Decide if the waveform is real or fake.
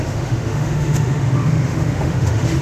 fake